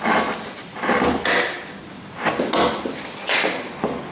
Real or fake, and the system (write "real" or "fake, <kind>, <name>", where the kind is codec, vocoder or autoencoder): real